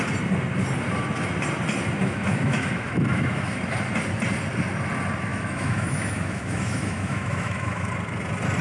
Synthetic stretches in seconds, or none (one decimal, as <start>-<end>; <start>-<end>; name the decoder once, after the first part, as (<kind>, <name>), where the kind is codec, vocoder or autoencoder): 2.0-3.6 (autoencoder, DAC-VAE); 5.3-7.9